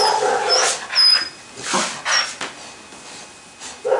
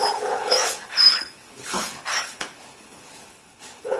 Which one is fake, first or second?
second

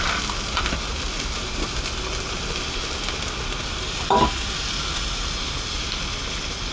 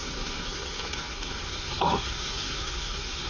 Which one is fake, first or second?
second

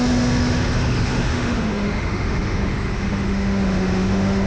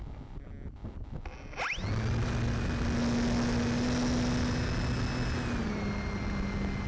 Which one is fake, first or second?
first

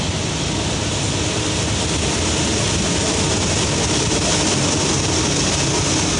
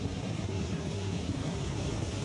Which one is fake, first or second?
second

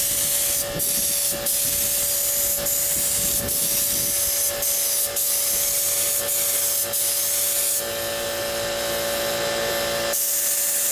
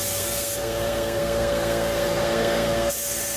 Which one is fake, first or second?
second